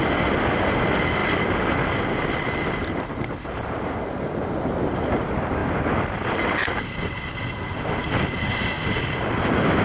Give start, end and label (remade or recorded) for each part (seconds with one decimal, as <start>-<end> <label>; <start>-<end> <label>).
0.0-9.8 recorded